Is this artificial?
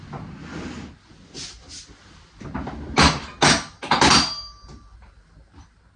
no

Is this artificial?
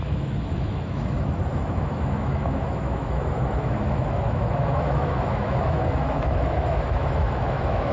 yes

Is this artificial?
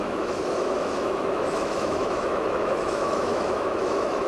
yes